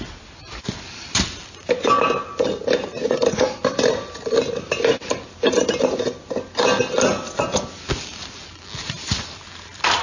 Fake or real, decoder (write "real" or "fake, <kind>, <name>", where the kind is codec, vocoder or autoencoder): real